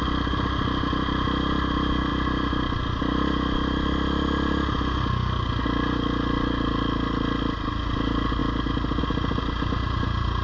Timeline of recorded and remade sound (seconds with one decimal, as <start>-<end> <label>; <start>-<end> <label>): 0.0-10.4 recorded